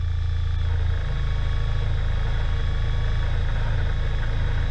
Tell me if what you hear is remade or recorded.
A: recorded